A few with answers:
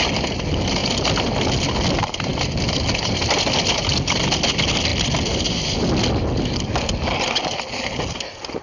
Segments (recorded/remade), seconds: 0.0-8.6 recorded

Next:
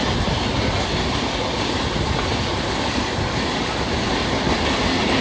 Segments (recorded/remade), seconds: 0.0-5.2 recorded

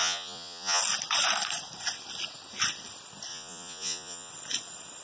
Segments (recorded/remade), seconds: 0.0-0.8 remade; 0.8-3.3 recorded; 3.3-4.3 remade; 4.3-5.0 recorded

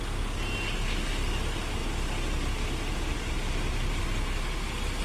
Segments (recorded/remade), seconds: 0.0-5.0 recorded

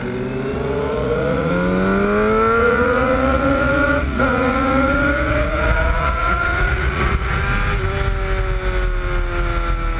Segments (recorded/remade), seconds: 0.0-0.5 recorded; 0.5-1.5 remade; 1.5-2.6 recorded; 2.6-7.4 remade; 7.4-10.0 recorded

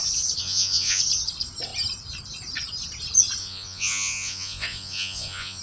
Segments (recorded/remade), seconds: 0.0-0.4 recorded; 0.4-1.0 remade; 1.0-3.4 recorded; 3.4-5.6 remade